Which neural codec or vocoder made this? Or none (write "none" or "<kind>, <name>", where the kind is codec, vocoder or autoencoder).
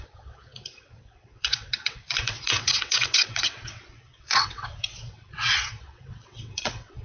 vocoder, WaveNeXt